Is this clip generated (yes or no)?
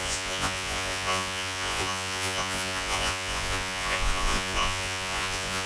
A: yes